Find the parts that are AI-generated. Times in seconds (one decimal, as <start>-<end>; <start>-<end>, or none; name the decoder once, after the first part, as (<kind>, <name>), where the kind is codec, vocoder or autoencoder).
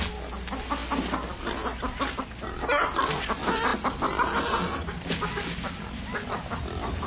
none